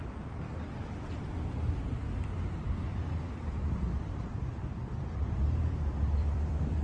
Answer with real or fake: fake